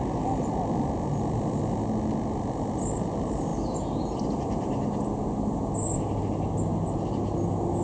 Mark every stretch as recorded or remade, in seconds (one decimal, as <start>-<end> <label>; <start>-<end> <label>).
0.0-7.8 recorded